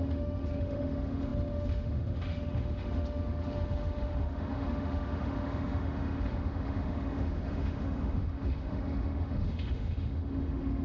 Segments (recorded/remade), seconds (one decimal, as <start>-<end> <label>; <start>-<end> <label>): 0.0-10.8 remade